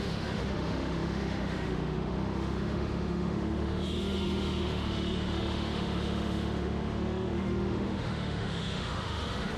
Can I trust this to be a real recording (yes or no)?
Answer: no